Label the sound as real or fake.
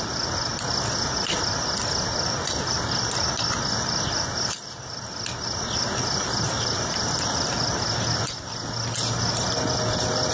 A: real